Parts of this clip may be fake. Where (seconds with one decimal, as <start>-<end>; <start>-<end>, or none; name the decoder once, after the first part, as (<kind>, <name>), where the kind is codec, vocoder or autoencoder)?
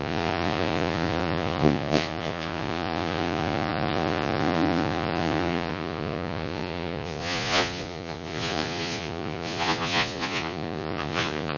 0.0-11.6 (vocoder, Vocos)